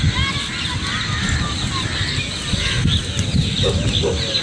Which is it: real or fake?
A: real